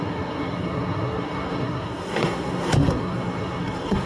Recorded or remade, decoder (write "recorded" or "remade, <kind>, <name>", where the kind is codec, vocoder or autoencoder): remade, codec, SNAC